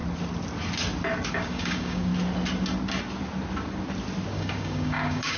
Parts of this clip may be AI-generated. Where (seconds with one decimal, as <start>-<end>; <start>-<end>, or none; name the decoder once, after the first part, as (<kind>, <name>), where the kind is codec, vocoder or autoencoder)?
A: 1.3-2.1 (codec, DAC); 4.3-5.4